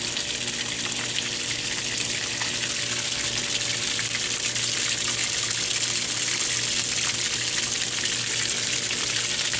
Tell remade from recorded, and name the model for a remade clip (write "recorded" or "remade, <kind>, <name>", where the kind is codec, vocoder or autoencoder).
recorded